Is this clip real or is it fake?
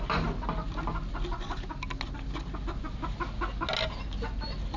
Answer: real